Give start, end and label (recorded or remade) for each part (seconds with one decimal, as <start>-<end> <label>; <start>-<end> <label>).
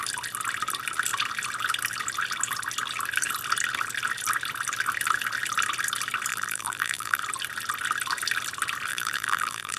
0.0-6.3 recorded; 6.3-7.2 remade; 7.2-8.9 recorded; 8.9-9.8 remade